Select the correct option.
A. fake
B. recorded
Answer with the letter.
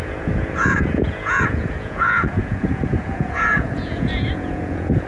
A